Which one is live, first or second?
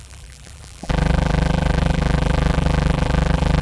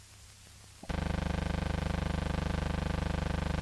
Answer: second